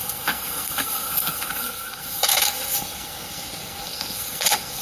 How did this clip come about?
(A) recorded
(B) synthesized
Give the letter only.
B